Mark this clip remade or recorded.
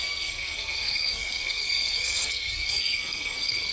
remade